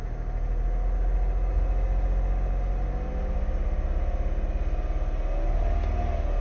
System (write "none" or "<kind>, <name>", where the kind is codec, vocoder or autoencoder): none